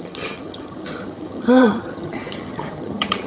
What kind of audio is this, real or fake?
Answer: fake